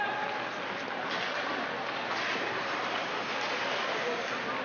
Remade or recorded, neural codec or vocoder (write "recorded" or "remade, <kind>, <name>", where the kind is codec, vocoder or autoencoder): recorded